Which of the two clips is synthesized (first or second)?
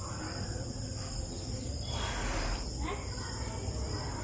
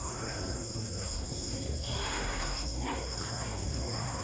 second